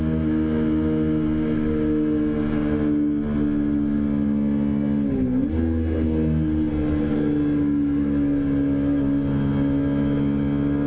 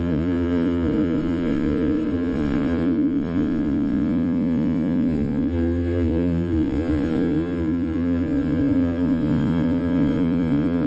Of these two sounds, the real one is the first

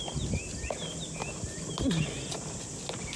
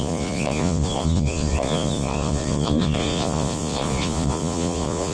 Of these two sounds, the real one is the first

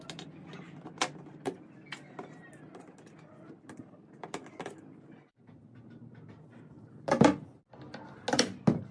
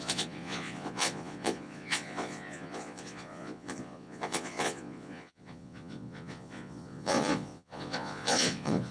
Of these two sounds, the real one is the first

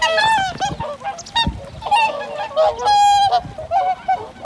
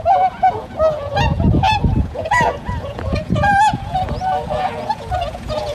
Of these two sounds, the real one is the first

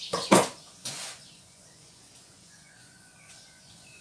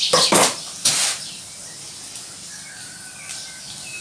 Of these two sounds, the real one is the second